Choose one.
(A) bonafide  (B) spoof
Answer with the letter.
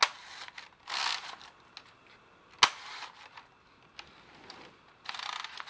A